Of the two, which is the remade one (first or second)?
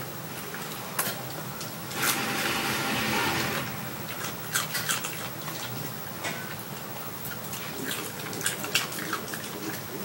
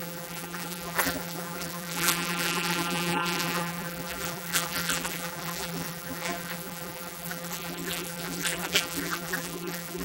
second